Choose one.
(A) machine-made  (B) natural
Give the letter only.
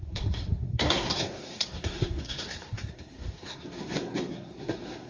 A